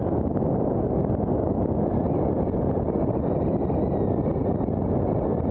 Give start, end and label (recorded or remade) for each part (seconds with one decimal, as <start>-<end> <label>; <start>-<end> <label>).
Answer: 0.0-5.5 recorded